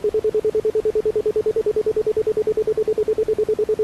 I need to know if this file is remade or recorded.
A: remade